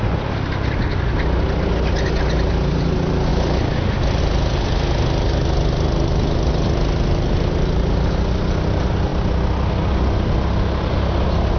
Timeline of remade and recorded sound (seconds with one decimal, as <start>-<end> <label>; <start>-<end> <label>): 0.0-11.6 recorded